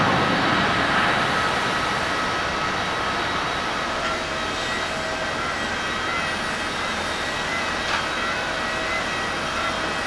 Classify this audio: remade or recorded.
recorded